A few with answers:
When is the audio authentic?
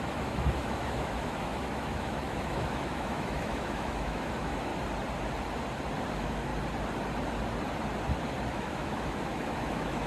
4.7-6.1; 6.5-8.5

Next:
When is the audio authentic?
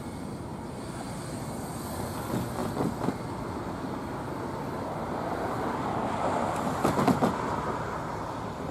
0.0-0.5; 1.2-8.7